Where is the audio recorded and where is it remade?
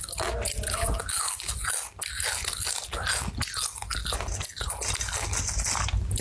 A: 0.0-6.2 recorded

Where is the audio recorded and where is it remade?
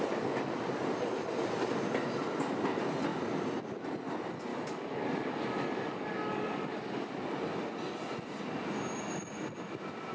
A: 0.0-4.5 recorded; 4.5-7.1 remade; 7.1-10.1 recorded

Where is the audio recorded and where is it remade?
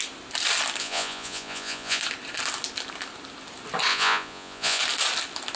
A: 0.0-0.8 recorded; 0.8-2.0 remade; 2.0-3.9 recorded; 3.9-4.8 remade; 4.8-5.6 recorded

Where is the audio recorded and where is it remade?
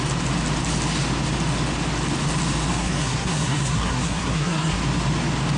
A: 0.0-2.7 recorded; 2.7-4.8 remade; 4.8-5.6 recorded